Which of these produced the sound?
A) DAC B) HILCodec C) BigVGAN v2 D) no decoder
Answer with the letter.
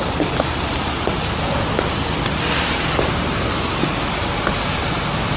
D